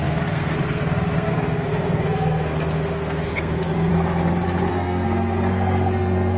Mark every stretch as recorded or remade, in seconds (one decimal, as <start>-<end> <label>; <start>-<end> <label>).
0.0-3.9 remade; 3.9-4.7 recorded; 4.7-6.4 remade